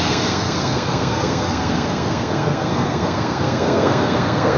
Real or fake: fake